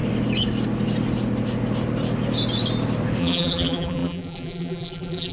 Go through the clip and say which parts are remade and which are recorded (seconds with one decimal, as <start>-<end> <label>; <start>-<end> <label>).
0.0-3.2 recorded; 3.2-5.3 remade